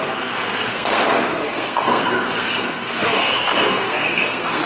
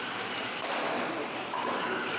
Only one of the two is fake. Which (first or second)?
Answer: first